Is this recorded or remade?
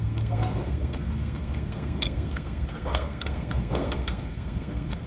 remade